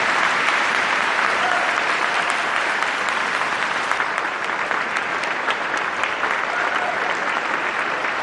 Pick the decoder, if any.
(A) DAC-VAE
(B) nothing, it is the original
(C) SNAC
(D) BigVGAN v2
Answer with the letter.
D